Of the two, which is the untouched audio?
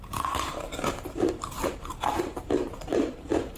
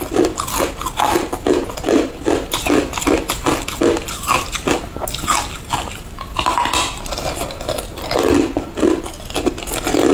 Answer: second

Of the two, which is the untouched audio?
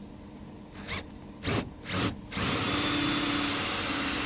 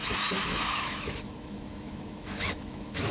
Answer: first